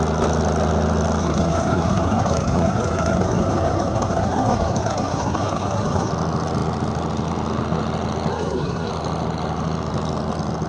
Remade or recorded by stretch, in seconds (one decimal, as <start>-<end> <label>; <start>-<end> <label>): 0.0-1.2 recorded; 1.2-6.1 remade; 6.1-8.3 recorded; 8.3-8.9 remade; 8.9-10.7 recorded